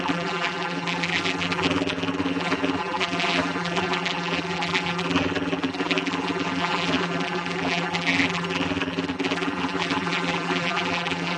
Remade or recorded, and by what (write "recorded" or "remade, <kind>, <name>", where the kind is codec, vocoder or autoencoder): remade, vocoder, BigVGAN v2